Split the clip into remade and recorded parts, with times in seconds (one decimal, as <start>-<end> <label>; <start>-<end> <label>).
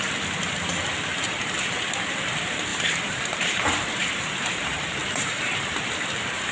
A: 0.0-2.7 recorded; 2.7-4.6 remade; 4.6-5.0 recorded; 5.0-5.8 remade; 5.8-6.5 recorded